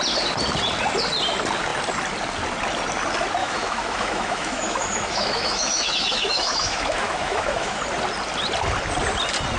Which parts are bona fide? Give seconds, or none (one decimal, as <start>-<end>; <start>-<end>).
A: 0.0-3.4; 7.8-9.6